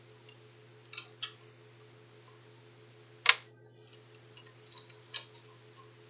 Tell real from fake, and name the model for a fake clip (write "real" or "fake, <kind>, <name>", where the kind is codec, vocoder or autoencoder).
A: real